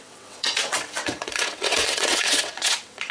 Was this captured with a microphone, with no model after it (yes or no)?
no